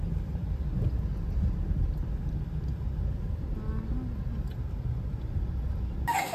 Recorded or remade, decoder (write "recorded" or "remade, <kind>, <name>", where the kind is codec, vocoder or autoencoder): recorded